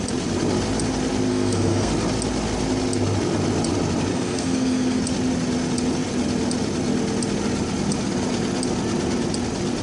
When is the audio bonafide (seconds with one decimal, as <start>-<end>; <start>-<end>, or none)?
0.0-1.3; 1.9-4.1; 5.0-9.8